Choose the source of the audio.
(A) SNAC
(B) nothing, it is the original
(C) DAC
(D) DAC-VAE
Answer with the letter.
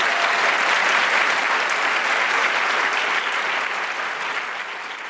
B